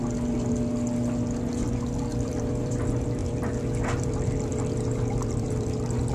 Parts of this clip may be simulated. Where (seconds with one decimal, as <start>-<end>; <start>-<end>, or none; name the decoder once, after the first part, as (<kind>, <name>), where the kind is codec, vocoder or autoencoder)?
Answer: 2.1-2.8 (vocoder, BigVGAN v2); 3.2-4.1; 4.5-6.1